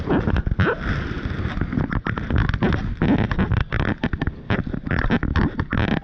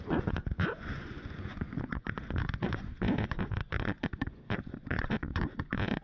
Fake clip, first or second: second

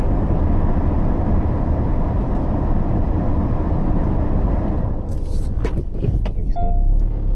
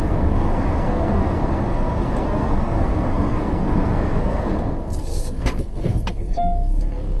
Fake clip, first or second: second